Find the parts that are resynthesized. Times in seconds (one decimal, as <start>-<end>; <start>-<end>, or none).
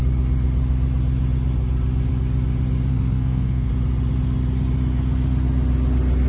2.9-3.7